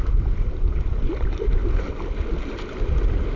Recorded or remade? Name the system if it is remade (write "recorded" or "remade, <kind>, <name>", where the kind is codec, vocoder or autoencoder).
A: recorded